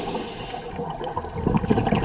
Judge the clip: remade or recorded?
recorded